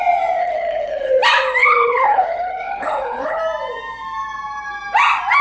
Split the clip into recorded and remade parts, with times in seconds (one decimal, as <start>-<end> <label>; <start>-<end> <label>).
0.0-0.4 recorded; 0.4-1.2 remade; 1.2-1.6 recorded; 1.6-3.4 remade; 3.4-5.4 recorded